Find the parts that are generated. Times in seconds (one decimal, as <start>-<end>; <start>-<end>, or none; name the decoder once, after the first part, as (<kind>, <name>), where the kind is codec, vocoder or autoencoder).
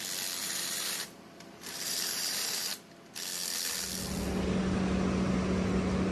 0.4-2.7 (vocoder, BigVGAN v2)